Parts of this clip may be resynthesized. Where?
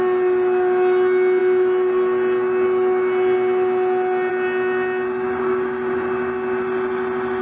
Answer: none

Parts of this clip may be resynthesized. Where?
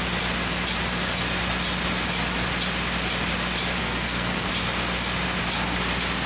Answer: 3.8-4.5 (codec, SNAC)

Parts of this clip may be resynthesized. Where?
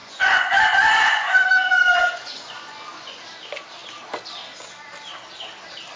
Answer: 0.0-3.2 (vocoder, Vocos)